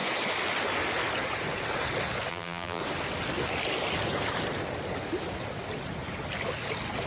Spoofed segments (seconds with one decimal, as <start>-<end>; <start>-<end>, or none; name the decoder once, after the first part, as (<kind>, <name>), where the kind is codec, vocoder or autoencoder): 2.3-2.8 (vocoder, BigVGAN v2)